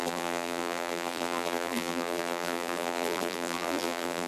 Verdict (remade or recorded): remade